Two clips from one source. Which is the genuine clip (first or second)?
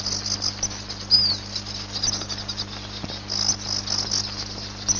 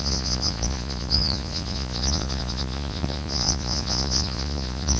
first